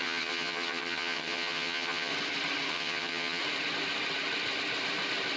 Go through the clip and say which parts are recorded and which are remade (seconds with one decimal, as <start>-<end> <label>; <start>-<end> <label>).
0.0-2.1 remade; 2.1-2.7 recorded; 2.7-3.4 remade; 3.4-5.4 recorded